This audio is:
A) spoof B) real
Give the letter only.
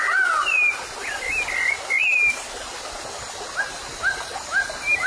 B